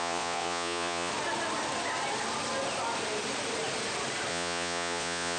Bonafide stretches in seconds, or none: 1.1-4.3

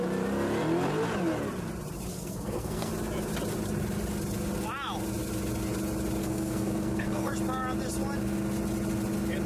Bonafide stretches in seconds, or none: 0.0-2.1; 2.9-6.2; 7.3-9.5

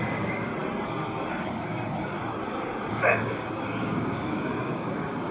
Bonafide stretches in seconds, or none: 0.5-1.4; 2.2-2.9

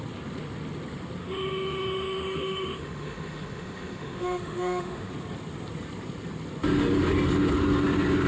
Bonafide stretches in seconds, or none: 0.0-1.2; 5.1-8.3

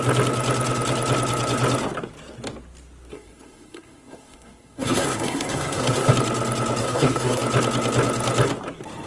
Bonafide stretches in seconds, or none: 0.0-3.1; 6.1-6.8; 7.4-9.1

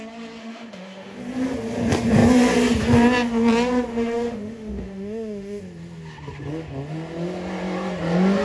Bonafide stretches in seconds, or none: 0.0-0.4; 1.2-3.9; 5.6-8.4

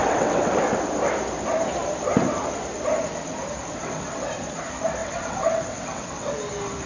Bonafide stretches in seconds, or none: 0.5-3.7; 4.3-5.0; 6.3-6.9